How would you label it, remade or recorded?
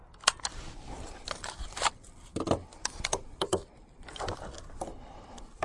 remade